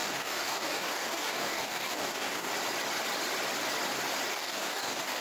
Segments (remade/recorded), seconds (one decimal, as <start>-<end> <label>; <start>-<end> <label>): 0.0-2.5 remade; 2.5-4.3 recorded; 4.3-5.2 remade